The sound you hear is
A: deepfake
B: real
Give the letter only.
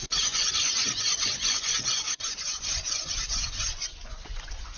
A